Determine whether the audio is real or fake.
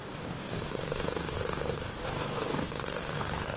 fake